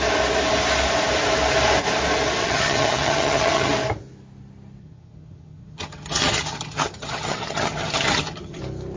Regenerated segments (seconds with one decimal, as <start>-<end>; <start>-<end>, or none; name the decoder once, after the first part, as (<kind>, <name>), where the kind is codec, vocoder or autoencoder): 2.4-3.7 (vocoder, HiFi-GAN); 4.8-8.6